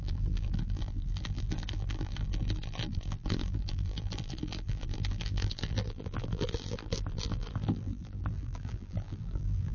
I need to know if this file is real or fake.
fake